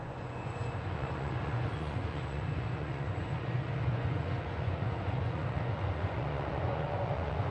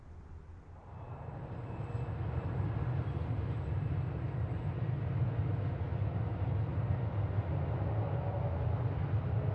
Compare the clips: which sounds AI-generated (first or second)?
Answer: first